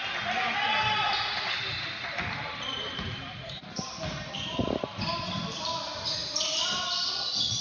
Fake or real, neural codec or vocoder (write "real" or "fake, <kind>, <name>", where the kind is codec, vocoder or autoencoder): real